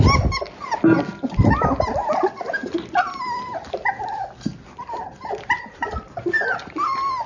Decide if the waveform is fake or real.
real